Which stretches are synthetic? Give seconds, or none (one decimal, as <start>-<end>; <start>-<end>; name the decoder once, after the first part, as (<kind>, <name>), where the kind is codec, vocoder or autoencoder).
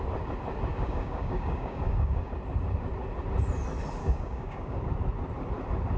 0.7-2.3 (codec, DAC); 4.0-4.8